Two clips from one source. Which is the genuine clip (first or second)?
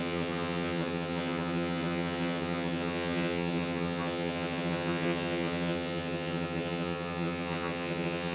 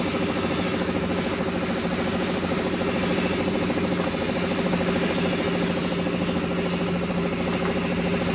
second